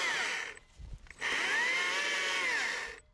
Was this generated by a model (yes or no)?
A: no